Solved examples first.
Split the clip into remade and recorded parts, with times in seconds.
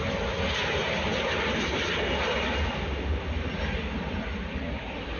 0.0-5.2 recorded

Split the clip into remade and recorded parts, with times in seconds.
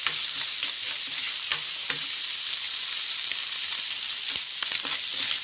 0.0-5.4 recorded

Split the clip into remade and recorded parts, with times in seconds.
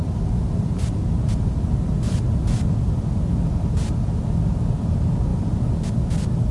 0.0-6.5 recorded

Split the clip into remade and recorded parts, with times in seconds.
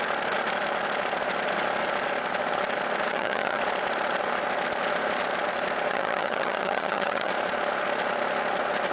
0.0-3.1 recorded; 3.1-3.6 remade; 3.6-5.9 recorded; 5.9-7.3 remade; 7.3-8.9 recorded